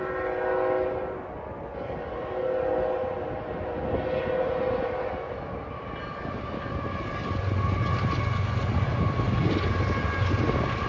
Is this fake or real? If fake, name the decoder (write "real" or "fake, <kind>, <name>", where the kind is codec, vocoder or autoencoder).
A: real